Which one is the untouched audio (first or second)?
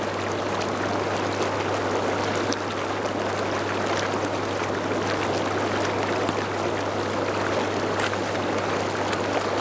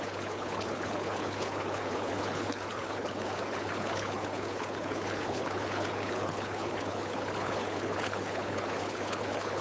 first